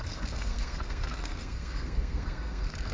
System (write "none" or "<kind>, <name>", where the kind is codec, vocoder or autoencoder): codec, SNAC